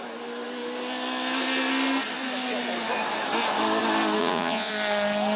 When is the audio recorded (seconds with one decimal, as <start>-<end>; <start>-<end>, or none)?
0.0-4.2; 4.7-5.4